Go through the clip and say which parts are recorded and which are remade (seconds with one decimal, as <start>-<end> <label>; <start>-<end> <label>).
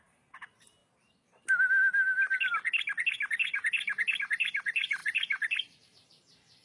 0.0-0.8 remade; 0.8-4.2 recorded; 4.2-6.6 remade